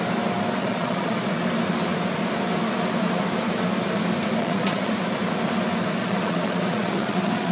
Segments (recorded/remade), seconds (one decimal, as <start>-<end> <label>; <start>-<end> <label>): 0.0-0.6 recorded; 0.6-1.2 remade; 1.2-4.4 recorded; 4.4-4.9 remade; 4.9-6.0 recorded; 6.0-7.5 remade